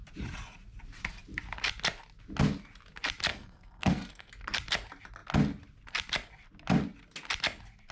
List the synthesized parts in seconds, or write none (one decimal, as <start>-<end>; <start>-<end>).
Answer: 3.3-4.3